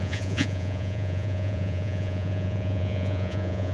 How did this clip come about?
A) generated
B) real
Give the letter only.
A